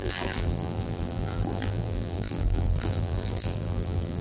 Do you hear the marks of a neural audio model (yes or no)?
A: yes